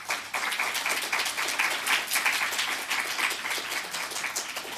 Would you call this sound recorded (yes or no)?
yes